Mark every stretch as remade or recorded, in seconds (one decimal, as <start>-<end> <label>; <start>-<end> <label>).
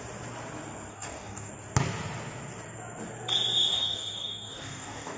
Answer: 0.0-0.9 recorded; 0.9-1.5 remade; 1.5-3.7 recorded; 3.7-5.2 remade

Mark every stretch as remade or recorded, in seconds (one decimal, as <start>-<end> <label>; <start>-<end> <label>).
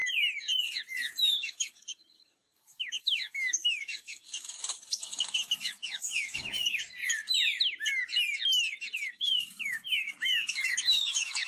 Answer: 0.0-1.2 recorded; 1.2-7.0 remade; 7.0-9.1 recorded; 9.1-11.5 remade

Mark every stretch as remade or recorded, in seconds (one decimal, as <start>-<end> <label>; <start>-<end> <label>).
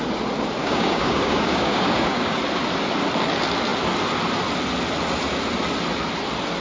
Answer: 0.0-0.6 recorded; 0.6-2.4 remade; 2.4-6.6 recorded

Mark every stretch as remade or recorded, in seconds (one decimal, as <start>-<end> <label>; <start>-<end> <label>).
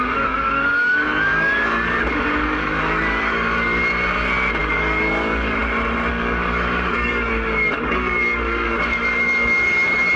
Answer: 0.0-3.8 remade; 3.8-4.6 recorded; 4.6-5.6 remade; 5.6-6.1 recorded; 6.1-10.2 remade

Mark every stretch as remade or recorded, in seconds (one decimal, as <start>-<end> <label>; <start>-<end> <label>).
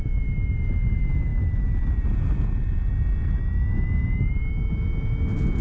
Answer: 0.0-5.6 recorded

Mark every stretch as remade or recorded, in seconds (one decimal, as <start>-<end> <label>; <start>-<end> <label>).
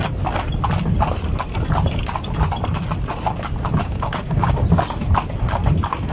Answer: 0.0-3.8 recorded; 3.8-4.5 remade; 4.5-6.1 recorded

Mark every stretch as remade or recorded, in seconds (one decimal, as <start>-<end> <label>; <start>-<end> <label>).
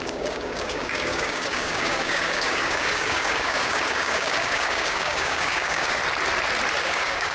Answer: 0.0-6.0 remade; 6.0-6.8 recorded; 6.8-7.3 remade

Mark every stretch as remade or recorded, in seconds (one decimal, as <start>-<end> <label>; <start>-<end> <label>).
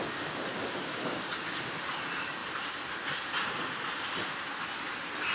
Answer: 0.0-0.5 recorded; 0.5-1.3 remade; 1.3-5.3 recorded